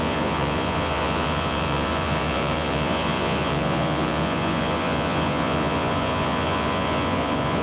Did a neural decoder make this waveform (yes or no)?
yes